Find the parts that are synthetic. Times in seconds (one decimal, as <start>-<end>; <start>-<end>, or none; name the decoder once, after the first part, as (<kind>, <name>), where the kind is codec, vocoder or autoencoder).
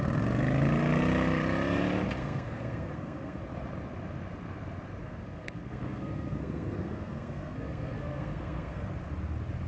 2.2-3.4 (codec, SNAC); 5.0-8.9